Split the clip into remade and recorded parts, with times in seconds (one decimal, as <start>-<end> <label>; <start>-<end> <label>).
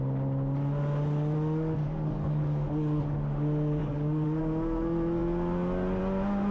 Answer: 0.0-1.8 recorded; 1.8-3.0 remade; 3.0-3.8 recorded; 3.8-4.4 remade; 4.4-6.5 recorded